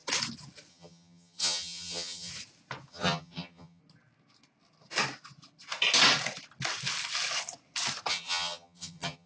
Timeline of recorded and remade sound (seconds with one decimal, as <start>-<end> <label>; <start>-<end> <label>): 0.0-0.7 recorded; 0.7-2.3 remade; 2.3-2.9 recorded; 2.9-3.8 remade; 3.8-8.1 recorded; 8.1-9.3 remade